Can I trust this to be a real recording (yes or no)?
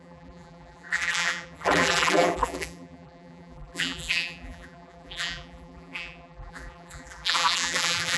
no